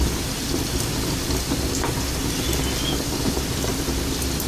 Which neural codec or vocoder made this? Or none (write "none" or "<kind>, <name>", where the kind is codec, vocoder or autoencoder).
none